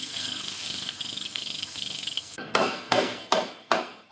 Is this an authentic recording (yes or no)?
no